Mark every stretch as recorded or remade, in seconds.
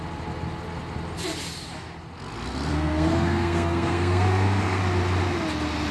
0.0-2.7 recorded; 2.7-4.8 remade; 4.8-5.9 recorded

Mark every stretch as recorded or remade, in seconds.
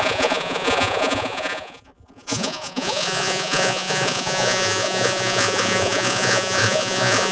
0.0-7.3 remade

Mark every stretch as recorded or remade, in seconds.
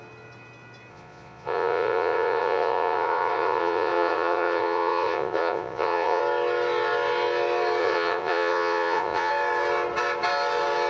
0.0-0.9 recorded; 0.9-6.2 remade; 6.2-7.8 recorded; 7.8-9.3 remade; 9.3-10.9 recorded